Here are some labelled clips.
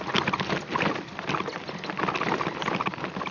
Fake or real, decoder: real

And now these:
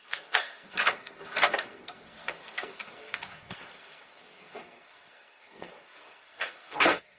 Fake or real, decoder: fake, codec, SNAC